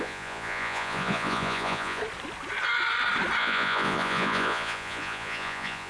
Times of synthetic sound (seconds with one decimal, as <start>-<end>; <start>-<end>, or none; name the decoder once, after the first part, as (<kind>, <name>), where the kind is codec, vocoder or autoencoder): 0.0-2.0 (vocoder, Vocos); 3.4-5.9